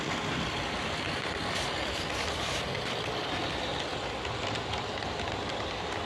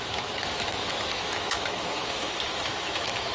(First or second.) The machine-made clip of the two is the second